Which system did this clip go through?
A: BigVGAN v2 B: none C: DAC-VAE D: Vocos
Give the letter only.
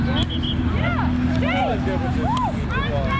B